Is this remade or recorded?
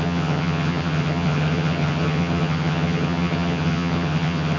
remade